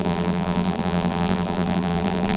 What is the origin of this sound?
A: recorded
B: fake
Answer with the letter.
B